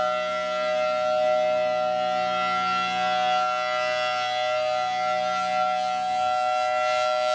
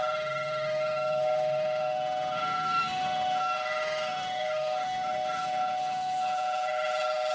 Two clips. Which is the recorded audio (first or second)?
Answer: first